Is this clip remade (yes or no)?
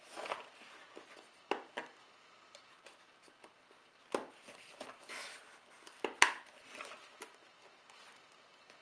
no